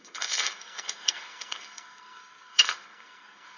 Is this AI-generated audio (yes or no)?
yes